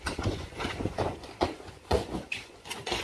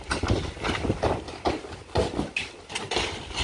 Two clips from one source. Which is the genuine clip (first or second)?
second